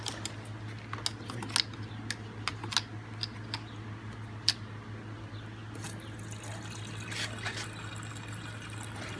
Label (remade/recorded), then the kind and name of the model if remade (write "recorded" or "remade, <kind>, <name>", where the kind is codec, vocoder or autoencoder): recorded